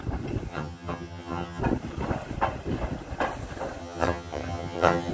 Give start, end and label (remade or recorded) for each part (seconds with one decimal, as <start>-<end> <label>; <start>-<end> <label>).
0.0-0.5 recorded; 0.5-1.6 remade; 1.6-3.8 recorded; 3.8-5.1 remade